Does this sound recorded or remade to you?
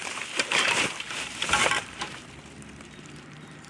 remade